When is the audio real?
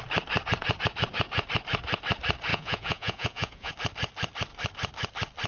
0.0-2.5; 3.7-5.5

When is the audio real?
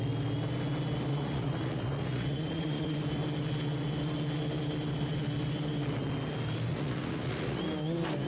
0.0-1.1; 3.0-6.7; 7.6-8.3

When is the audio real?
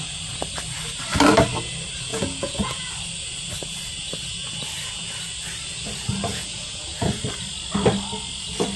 0.0-2.1; 2.9-6.3; 7.2-8.8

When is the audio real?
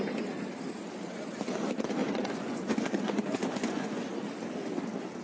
0.0-2.0; 4.0-5.2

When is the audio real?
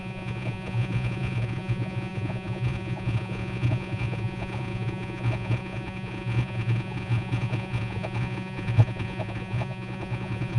none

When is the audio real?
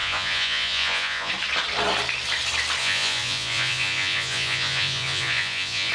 1.3-2.8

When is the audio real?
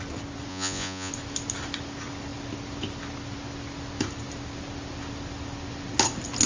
0.0-0.5; 1.1-6.5